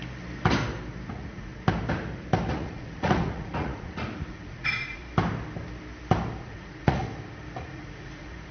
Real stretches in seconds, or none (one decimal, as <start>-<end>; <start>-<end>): 0.0-1.1; 1.5-2.5; 5.0-6.4; 7.1-7.6